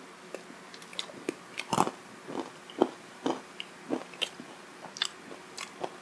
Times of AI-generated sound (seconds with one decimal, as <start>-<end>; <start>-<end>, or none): none